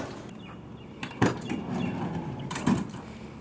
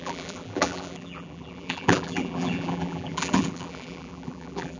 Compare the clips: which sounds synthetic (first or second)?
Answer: second